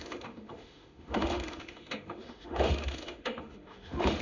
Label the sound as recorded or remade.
remade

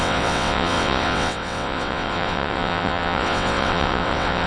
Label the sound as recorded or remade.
remade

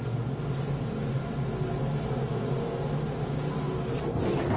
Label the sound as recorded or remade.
recorded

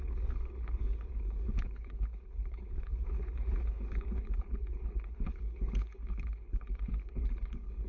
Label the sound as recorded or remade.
remade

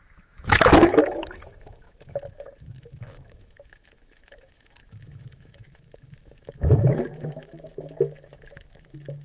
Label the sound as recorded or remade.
remade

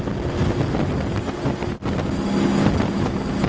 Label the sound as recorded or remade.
recorded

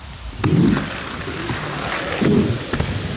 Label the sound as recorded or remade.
recorded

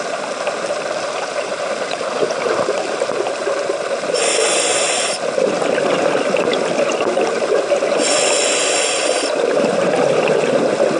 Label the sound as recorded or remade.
remade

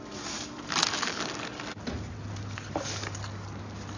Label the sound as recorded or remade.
recorded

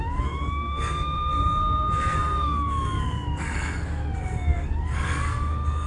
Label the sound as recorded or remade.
remade